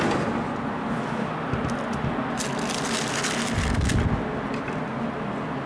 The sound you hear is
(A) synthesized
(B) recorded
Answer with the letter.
B